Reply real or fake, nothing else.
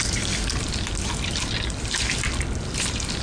real